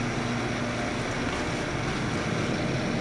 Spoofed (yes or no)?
no